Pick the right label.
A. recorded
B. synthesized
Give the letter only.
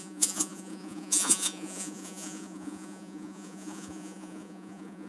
B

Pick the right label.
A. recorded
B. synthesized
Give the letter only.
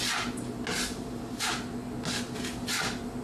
A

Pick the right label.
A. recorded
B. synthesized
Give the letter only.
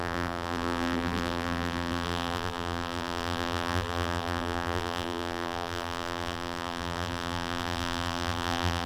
B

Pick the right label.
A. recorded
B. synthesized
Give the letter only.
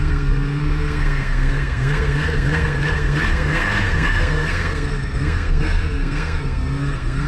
B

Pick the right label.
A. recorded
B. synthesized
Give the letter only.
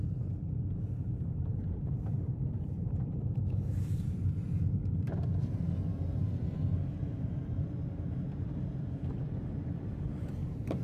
B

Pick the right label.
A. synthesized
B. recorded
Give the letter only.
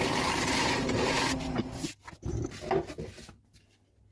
B